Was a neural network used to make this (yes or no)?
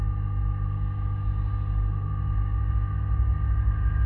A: no